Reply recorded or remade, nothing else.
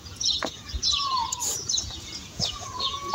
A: remade